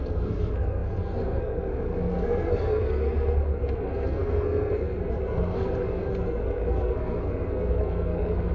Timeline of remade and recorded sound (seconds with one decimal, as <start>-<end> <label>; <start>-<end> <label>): 0.0-8.5 remade

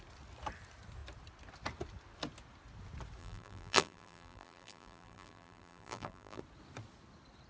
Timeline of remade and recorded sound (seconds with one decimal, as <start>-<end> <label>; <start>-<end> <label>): 0.0-3.2 recorded; 3.2-6.4 remade; 6.4-7.5 recorded

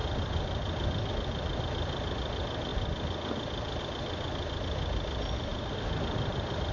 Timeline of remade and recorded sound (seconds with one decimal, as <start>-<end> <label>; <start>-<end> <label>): 0.0-6.7 recorded

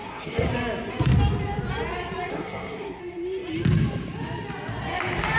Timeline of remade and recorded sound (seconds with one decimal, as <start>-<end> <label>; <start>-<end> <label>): 0.0-0.5 remade; 0.5-2.3 recorded; 2.3-3.0 remade; 3.0-5.4 recorded